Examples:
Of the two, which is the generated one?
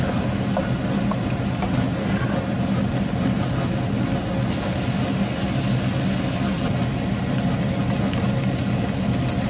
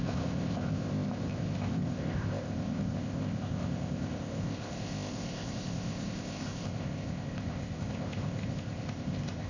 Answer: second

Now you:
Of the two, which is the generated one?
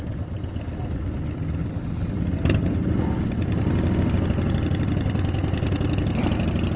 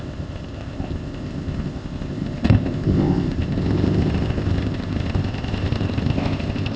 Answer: second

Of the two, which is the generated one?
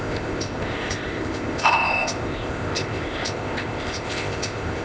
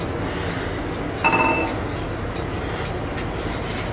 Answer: first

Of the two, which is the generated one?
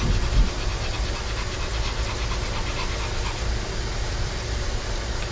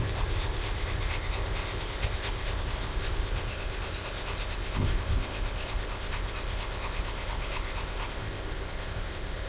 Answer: second